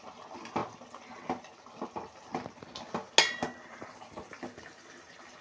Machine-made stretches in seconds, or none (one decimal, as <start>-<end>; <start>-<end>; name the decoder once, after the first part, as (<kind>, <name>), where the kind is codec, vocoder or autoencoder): none